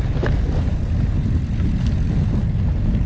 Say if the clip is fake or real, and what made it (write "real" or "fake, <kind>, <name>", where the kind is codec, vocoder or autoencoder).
real